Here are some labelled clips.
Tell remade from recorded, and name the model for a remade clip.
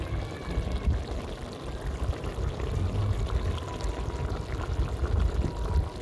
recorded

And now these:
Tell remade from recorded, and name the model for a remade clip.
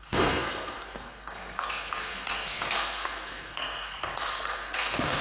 remade, codec, SNAC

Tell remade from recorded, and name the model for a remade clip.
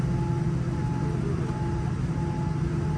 recorded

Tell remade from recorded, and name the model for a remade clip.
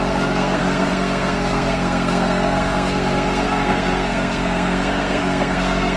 remade, codec, SNAC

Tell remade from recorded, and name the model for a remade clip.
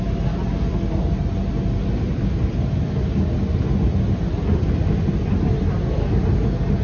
recorded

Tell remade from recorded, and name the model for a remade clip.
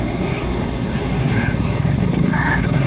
remade, codec, SNAC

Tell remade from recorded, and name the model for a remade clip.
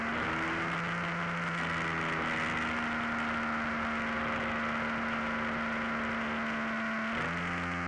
recorded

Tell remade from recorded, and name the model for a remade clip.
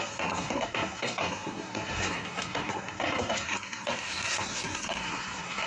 remade, codec, SNAC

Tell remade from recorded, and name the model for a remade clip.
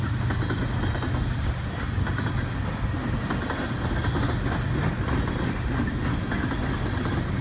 recorded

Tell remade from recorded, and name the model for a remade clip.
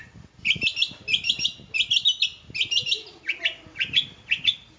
recorded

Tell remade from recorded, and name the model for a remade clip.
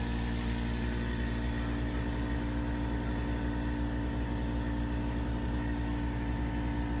recorded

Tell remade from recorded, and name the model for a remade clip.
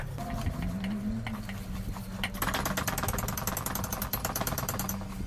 recorded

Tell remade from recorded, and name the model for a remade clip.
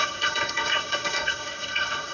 remade, codec, SNAC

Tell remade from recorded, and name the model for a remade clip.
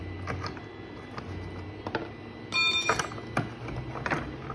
recorded